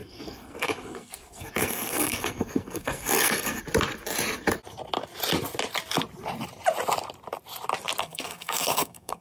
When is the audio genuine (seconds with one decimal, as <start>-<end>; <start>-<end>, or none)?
3.6-8.0